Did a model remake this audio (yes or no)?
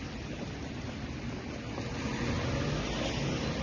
no